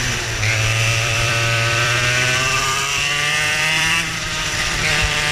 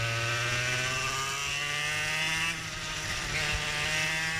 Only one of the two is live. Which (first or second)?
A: second